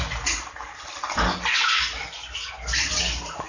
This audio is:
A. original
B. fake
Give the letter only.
A